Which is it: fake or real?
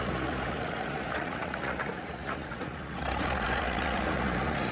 fake